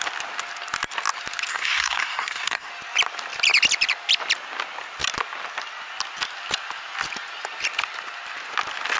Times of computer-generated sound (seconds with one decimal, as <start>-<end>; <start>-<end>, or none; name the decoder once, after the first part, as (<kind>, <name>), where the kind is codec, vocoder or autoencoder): 1.5-2.7 (codec, SNAC)